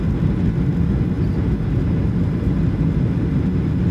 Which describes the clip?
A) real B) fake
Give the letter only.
A